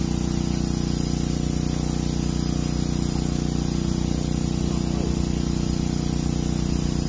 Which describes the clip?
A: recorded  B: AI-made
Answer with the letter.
A